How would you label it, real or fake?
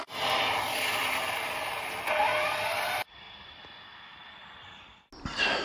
real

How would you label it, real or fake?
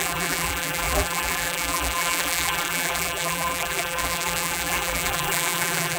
fake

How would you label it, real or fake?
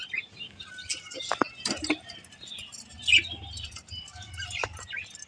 real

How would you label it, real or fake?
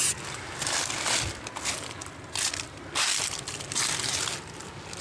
real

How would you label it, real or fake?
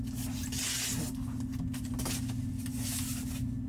real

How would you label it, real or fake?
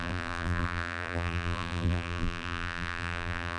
fake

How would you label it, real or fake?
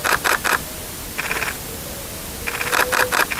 real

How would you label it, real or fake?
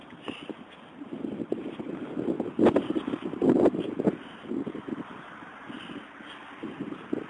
real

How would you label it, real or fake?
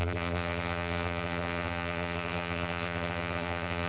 fake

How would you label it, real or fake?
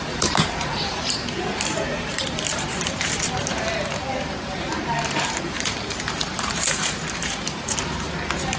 fake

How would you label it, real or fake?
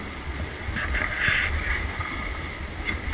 real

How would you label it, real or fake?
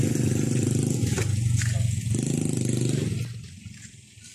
real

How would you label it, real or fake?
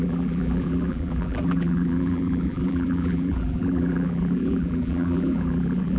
fake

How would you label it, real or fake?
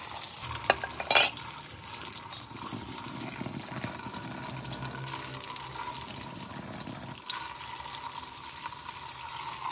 real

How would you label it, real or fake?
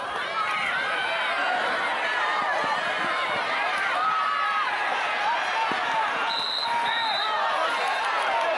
fake